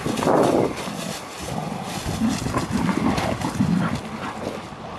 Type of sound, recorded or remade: recorded